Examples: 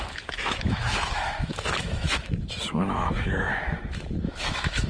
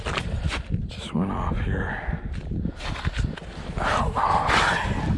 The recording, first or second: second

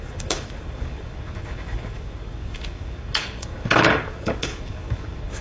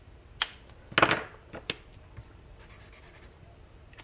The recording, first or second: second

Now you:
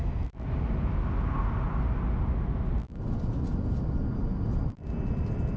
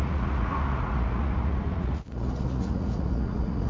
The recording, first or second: first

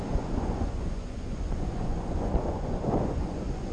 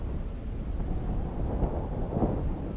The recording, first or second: second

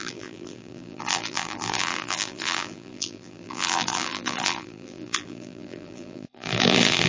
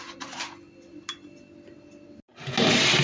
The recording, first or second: second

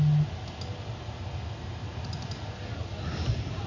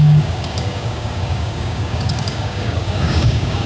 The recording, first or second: first